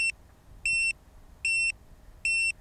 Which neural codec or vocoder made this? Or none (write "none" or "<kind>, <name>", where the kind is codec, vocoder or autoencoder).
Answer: none